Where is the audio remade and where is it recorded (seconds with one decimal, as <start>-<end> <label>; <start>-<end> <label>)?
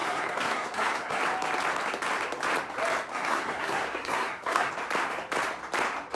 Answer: 0.0-1.2 remade; 1.2-3.1 recorded; 3.1-4.7 remade; 4.7-6.2 recorded